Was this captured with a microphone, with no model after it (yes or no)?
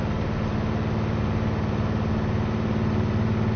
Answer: yes